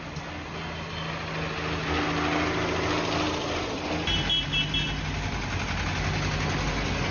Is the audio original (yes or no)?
yes